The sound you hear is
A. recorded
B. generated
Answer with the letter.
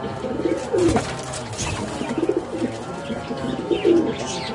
A